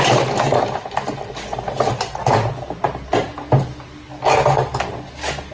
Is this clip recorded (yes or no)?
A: yes